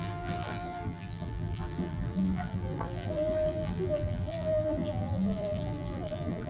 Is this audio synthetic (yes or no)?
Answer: yes